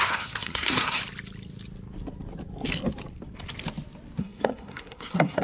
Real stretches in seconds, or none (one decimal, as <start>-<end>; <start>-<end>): 1.0-4.2